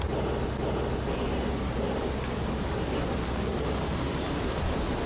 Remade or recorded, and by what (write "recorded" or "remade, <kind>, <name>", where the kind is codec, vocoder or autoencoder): recorded